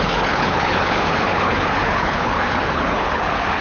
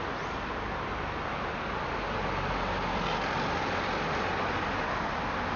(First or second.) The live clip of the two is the second